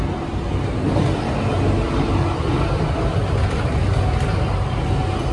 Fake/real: real